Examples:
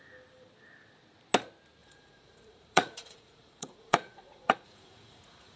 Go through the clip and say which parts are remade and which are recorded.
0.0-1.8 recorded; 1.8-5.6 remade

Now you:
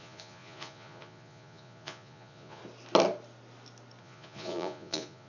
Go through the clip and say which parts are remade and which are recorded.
0.0-2.6 remade; 2.6-4.0 recorded; 4.0-5.3 remade

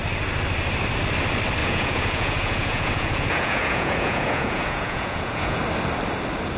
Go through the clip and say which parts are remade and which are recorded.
0.0-1.6 recorded; 1.6-5.6 remade; 5.6-6.6 recorded